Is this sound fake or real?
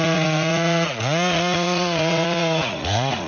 fake